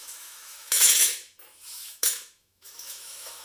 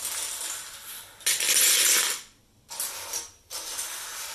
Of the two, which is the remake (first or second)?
first